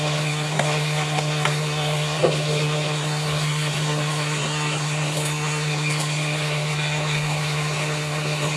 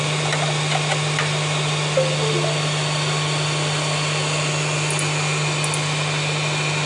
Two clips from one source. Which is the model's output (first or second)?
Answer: first